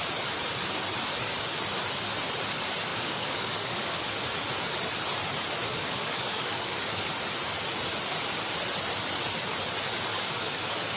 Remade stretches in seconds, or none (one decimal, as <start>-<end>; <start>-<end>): 2.9-4.1; 5.7-7.1; 10.1-11.0